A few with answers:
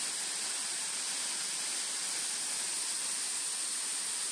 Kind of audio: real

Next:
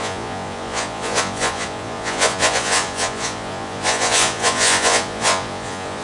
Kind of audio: fake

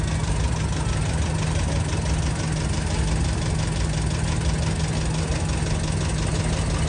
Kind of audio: real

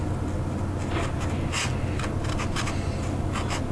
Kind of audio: real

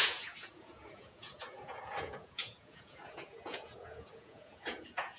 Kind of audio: fake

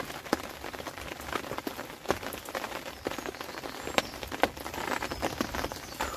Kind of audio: real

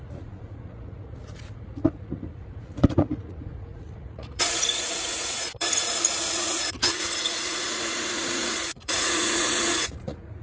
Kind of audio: fake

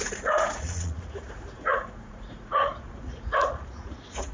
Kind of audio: fake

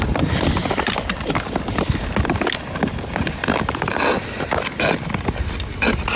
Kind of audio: real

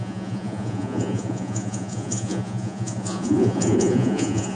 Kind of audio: fake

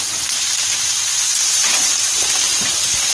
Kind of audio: real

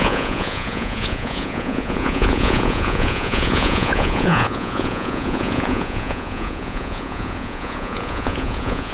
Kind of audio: fake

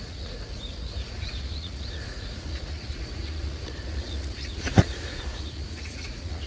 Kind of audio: fake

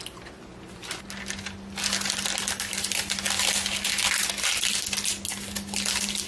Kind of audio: real